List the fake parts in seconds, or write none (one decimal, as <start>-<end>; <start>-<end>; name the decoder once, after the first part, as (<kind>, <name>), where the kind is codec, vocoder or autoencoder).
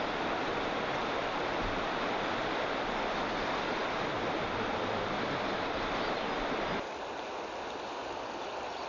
none